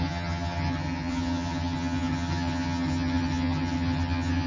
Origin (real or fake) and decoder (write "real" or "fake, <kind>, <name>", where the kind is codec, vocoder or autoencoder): fake, vocoder, HiFi-GAN